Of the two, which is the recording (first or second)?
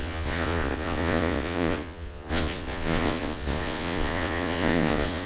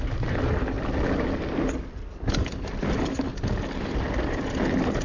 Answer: second